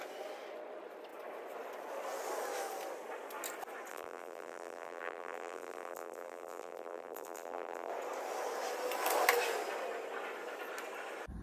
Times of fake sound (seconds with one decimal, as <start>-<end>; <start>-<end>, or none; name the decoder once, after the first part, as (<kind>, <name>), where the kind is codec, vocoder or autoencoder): 3.9-7.9 (vocoder, BigVGAN v2)